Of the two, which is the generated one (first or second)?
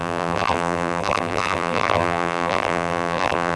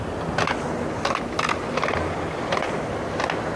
first